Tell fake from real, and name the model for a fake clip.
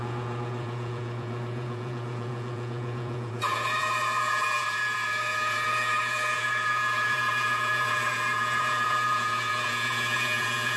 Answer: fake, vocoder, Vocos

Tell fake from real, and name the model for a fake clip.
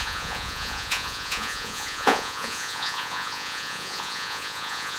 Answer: fake, vocoder, Vocos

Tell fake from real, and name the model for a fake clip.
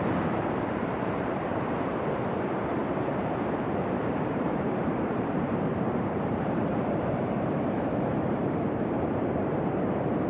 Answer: fake, vocoder, BigVGAN v2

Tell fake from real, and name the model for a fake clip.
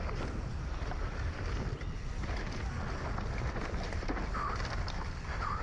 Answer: fake, vocoder, BigVGAN v2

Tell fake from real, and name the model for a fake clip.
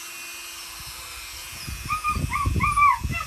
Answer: real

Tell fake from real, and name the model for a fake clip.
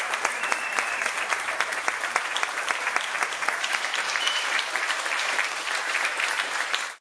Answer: fake, vocoder, BigVGAN v2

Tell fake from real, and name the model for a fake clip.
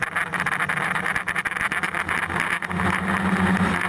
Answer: real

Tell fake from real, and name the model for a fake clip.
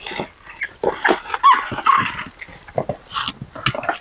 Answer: real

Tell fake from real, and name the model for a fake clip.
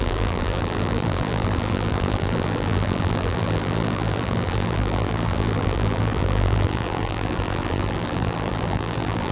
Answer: fake, vocoder, BigVGAN v2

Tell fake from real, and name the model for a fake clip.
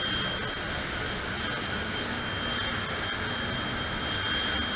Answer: real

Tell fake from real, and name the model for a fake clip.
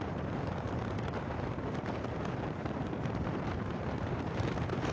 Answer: fake, vocoder, BigVGAN v2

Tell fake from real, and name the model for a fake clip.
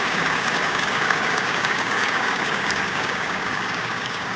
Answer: fake, codec, DAC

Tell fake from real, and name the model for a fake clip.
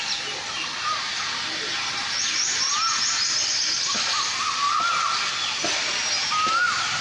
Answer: real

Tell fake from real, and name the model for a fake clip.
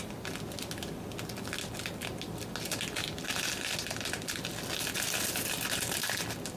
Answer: real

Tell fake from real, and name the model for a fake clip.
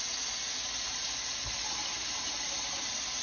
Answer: real